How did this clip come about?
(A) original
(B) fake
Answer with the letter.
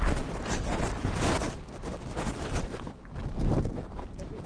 A